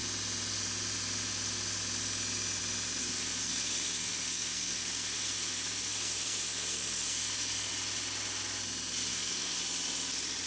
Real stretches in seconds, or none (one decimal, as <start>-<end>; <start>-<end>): 0.0-3.0; 7.7-9.1; 9.6-10.5